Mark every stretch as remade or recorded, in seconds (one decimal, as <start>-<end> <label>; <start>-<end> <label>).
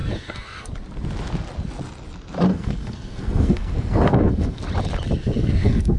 0.0-0.7 remade; 0.7-2.5 recorded; 2.5-4.6 remade; 4.6-5.2 recorded; 5.2-6.0 remade